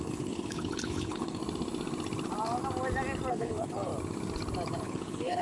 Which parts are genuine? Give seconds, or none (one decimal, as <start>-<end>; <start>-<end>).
1.4-3.3; 3.9-4.8